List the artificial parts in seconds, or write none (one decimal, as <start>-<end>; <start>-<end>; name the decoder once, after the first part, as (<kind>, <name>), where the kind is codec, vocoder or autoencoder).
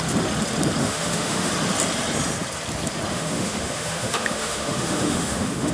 0.8-1.5 (autoencoder, DAC-VAE); 3.1-5.7